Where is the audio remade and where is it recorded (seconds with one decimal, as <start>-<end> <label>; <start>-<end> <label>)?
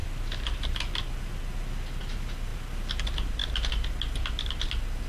0.0-5.1 recorded